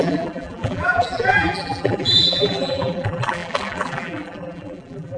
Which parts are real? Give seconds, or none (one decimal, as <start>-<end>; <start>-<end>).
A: none